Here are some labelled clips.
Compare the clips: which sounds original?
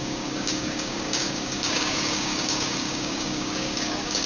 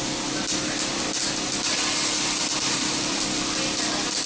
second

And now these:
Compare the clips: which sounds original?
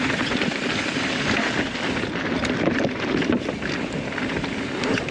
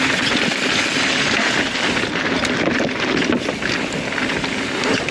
second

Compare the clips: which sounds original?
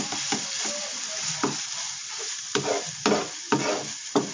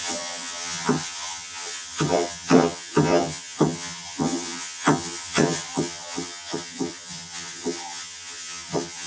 first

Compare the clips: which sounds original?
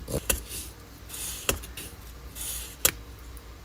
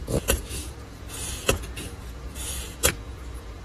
first